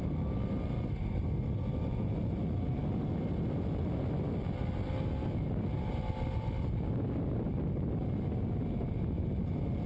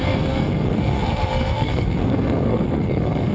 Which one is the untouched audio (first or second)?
first